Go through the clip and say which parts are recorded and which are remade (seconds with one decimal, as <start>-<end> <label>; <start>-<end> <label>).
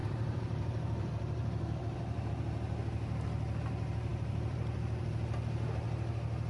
0.0-2.3 remade; 2.3-4.1 recorded; 4.1-5.1 remade; 5.1-6.5 recorded